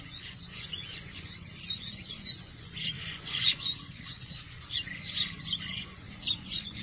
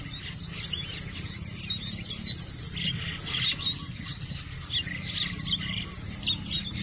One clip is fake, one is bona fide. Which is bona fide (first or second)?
second